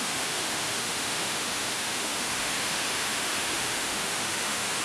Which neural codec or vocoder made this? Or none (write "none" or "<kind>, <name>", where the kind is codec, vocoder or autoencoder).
autoencoder, DAC-VAE